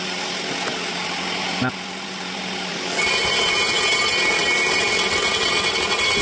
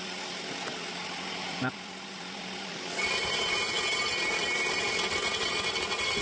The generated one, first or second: second